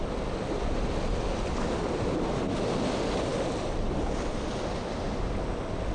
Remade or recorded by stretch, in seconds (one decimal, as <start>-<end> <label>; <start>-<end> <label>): 0.0-5.9 recorded